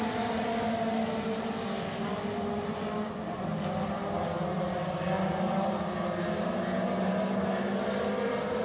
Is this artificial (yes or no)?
no